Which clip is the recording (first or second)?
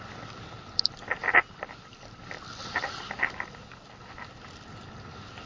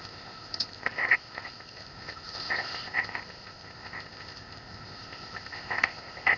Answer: first